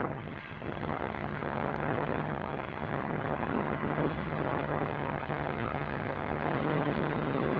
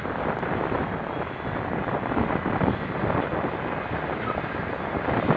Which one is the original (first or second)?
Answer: second